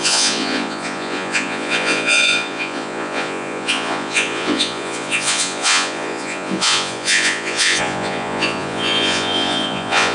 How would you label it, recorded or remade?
remade